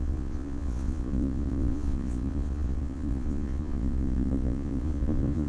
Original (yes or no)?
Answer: no